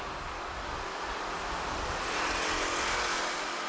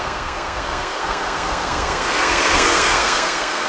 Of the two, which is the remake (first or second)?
second